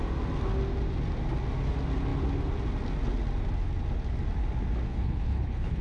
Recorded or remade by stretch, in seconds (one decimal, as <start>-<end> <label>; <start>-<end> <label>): 0.0-4.9 recorded; 4.9-5.8 remade